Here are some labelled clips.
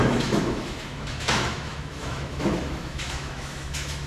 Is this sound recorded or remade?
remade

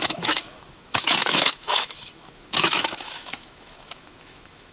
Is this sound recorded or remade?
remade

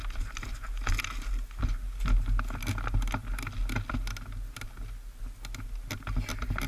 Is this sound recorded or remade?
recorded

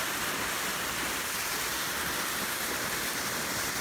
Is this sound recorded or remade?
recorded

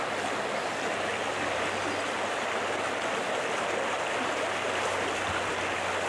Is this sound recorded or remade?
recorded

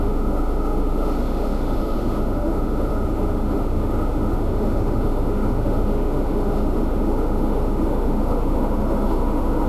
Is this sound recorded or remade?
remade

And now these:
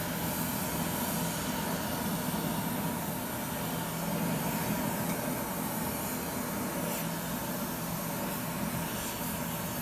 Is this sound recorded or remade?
recorded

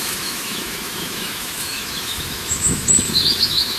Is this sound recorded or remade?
remade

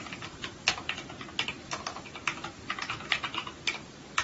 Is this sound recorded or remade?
recorded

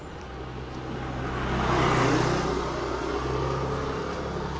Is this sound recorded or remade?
recorded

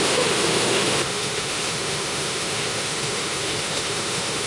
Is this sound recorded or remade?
remade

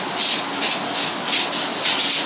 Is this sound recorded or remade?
recorded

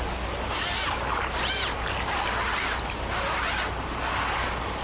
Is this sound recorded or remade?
recorded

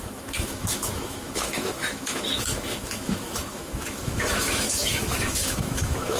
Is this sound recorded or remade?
remade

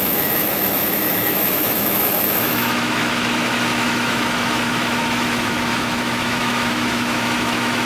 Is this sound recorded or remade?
remade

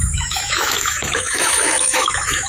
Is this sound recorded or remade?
remade